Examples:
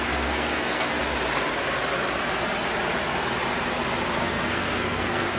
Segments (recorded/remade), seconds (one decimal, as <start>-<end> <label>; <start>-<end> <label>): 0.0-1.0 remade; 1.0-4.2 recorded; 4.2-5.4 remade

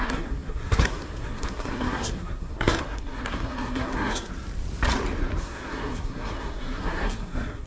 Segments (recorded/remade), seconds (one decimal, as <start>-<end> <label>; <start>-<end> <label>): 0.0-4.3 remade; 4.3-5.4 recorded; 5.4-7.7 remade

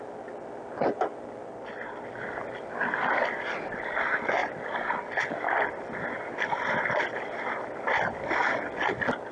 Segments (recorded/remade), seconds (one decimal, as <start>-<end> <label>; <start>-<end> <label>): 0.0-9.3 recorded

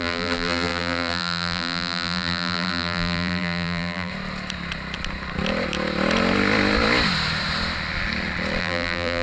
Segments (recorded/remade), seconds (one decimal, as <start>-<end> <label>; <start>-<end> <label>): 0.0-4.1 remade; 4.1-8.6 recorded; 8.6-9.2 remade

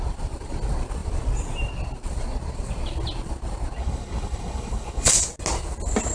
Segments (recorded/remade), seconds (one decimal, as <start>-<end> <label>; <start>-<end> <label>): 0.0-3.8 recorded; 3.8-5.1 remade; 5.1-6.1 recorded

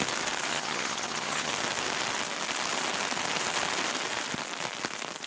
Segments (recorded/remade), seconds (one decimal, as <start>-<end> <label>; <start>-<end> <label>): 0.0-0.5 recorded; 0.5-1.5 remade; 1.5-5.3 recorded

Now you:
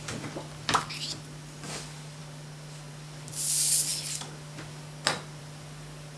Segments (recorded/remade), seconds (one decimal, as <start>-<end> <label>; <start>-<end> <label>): 0.0-6.2 recorded

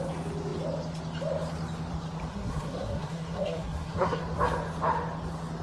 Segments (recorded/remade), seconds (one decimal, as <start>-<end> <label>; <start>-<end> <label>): 0.0-2.3 recorded; 2.3-4.2 remade; 4.2-5.6 recorded